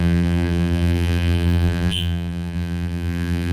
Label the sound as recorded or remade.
remade